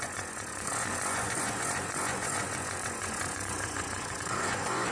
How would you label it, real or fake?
fake